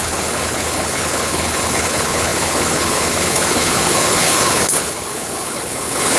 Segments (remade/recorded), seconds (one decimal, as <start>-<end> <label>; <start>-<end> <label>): 0.0-6.2 remade